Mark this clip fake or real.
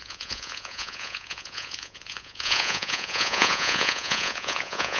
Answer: fake